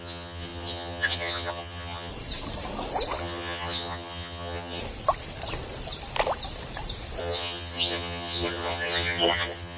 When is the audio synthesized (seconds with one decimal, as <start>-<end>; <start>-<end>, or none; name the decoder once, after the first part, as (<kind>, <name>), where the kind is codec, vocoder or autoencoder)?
0.0-2.1 (vocoder, HiFi-GAN); 3.2-4.8; 7.2-9.8